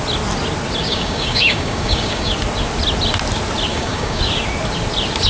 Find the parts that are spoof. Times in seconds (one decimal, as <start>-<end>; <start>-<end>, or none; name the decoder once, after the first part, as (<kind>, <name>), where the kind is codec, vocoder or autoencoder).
0.8-2.3 (codec, DAC); 3.7-4.2